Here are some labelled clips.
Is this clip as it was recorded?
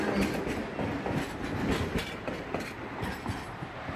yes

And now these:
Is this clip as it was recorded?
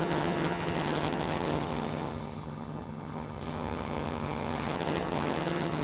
no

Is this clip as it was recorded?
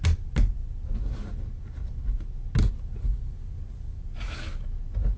yes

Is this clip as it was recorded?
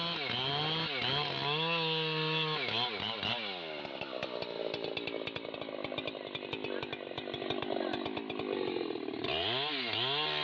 yes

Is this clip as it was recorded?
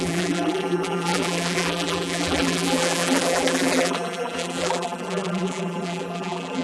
no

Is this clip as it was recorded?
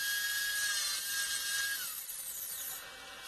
yes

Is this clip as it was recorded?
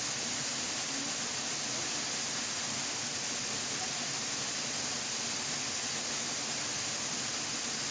yes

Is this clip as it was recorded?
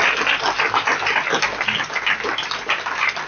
yes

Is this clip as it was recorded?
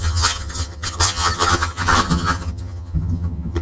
no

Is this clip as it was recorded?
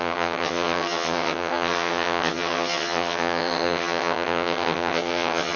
no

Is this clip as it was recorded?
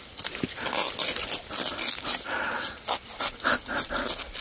yes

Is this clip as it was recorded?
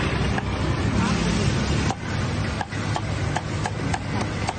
yes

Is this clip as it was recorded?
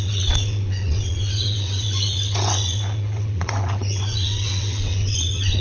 no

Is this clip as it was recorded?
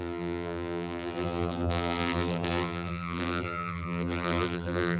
no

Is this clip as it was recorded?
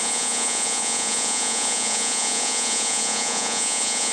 no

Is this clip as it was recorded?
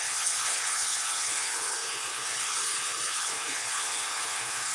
no